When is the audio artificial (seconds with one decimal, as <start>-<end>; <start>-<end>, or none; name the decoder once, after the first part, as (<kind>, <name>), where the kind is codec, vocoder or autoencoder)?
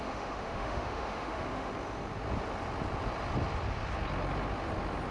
0.0-1.7 (autoencoder, DAC-VAE)